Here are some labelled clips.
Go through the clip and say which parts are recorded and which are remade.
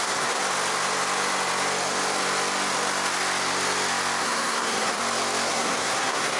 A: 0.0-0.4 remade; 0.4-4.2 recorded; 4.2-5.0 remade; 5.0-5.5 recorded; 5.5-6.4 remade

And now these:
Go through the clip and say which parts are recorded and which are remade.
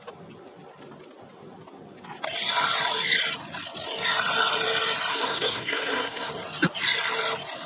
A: 0.0-5.1 recorded; 5.1-6.3 remade; 6.3-7.7 recorded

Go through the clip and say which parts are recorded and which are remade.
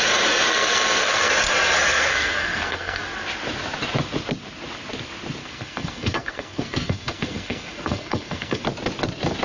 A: 0.0-0.5 recorded; 0.5-1.3 remade; 1.3-1.9 recorded; 1.9-3.0 remade; 3.0-5.4 recorded; 5.4-8.6 remade; 8.6-9.4 recorded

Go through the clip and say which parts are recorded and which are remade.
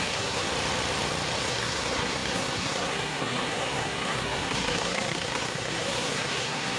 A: 0.0-0.5 remade; 0.5-1.5 recorded; 1.5-6.8 remade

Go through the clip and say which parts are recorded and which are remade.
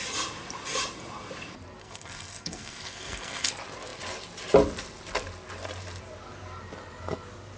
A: 0.0-1.8 recorded; 1.8-3.5 remade; 3.5-7.6 recorded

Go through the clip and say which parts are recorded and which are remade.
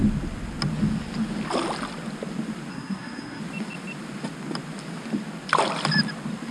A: 0.0-2.7 recorded; 2.7-3.4 remade; 3.4-6.5 recorded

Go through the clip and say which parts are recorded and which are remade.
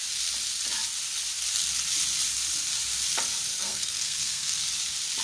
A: 0.0-3.5 recorded; 3.5-4.6 remade; 4.6-5.2 recorded